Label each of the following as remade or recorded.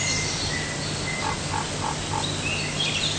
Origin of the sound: recorded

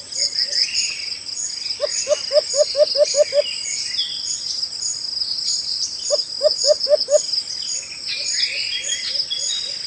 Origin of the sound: recorded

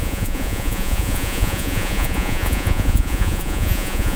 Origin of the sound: remade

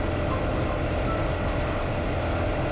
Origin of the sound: recorded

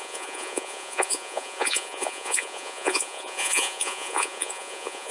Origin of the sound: remade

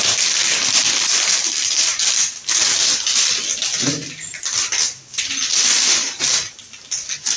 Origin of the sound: recorded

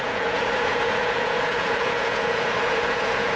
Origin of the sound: remade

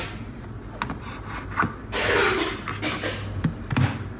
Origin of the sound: recorded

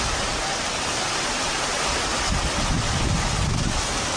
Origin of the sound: recorded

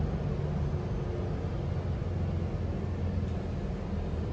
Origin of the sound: recorded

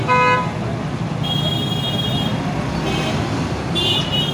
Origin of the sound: recorded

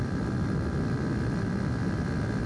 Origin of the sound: recorded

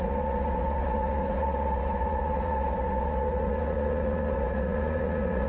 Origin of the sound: remade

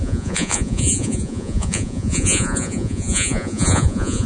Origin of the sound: remade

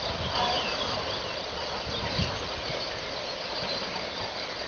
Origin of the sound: recorded